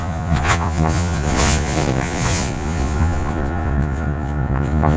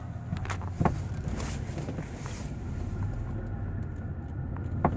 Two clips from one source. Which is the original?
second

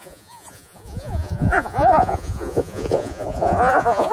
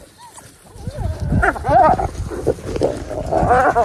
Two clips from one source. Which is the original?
second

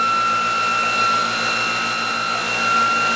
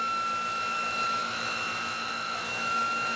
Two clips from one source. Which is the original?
first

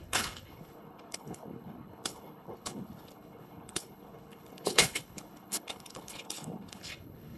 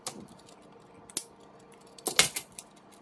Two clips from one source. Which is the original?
second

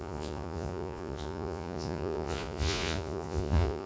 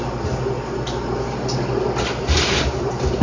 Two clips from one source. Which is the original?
second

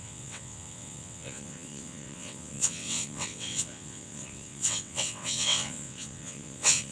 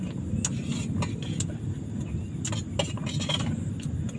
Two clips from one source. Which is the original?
second